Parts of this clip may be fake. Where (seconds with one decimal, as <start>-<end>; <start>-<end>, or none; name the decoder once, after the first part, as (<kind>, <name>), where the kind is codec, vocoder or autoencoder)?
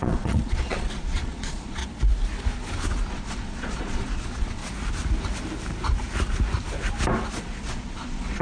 0.0-1.8 (vocoder, Vocos); 3.1-4.6; 7.3-8.4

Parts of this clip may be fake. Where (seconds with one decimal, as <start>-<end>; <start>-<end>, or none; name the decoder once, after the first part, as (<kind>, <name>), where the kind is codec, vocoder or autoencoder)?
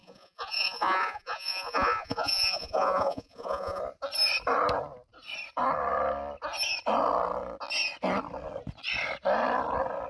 0.0-3.8 (vocoder, Vocos)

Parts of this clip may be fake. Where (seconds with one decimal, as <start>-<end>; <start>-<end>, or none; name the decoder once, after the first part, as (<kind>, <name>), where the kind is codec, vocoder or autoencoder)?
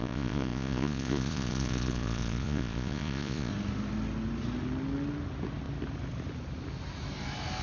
0.0-3.5 (vocoder, Vocos)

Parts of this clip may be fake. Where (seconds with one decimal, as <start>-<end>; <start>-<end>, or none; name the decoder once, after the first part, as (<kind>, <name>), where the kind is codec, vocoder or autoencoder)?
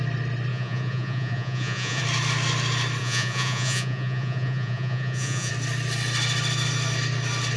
0.5-2.0 (vocoder, Vocos); 3.0-5.5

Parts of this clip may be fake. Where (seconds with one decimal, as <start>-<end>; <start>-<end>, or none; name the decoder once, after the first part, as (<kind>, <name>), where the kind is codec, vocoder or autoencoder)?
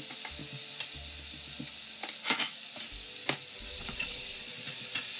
3.7-5.2 (vocoder, Vocos)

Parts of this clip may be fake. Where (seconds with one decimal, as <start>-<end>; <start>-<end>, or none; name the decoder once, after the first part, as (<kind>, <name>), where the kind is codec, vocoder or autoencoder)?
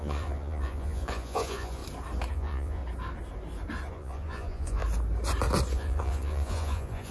0.0-1.8 (vocoder, Vocos); 2.3-2.8; 3.9-4.8; 5.7-7.1